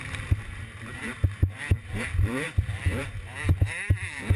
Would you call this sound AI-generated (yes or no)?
yes